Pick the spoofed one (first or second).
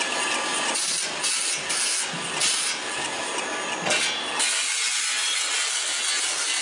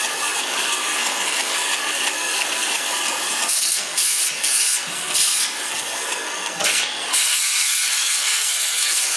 second